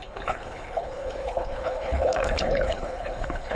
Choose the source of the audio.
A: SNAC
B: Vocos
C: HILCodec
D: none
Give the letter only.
C